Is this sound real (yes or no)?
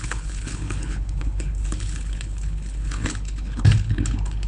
no